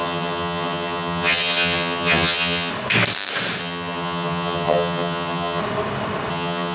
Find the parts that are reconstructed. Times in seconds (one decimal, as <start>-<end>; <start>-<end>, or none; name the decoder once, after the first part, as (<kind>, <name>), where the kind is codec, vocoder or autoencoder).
0.0-2.7 (vocoder, HiFi-GAN); 3.6-5.6; 6.3-6.7